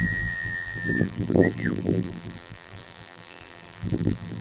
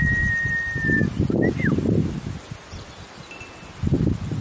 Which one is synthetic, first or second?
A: first